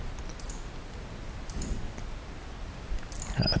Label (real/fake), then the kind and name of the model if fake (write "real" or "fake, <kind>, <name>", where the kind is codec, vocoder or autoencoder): real